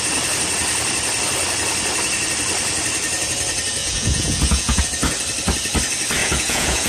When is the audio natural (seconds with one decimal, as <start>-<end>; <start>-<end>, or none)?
0.0-3.8; 4.8-6.2